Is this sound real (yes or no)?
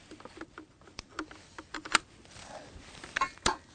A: yes